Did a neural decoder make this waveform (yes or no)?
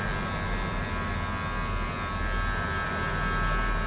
no